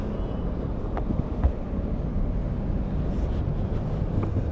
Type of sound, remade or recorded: recorded